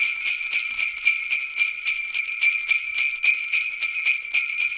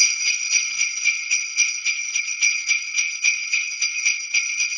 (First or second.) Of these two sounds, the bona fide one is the first